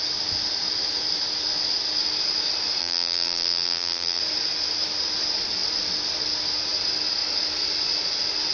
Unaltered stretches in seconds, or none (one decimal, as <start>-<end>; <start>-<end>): 0.0-2.8; 4.2-8.5